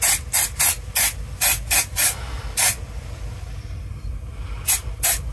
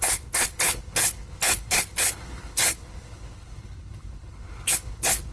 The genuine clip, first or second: first